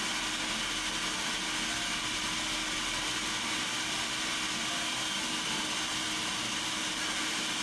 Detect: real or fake real